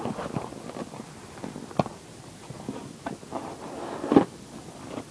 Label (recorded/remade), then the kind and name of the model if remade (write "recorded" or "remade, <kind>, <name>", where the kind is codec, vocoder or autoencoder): recorded